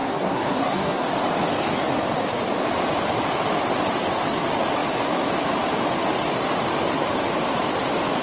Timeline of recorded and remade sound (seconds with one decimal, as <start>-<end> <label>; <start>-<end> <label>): 0.0-1.1 remade; 1.1-8.2 recorded